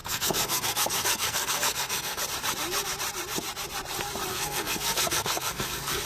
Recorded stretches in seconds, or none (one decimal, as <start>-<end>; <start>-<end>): 2.2-4.3